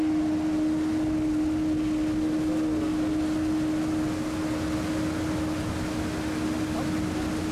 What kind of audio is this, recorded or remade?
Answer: recorded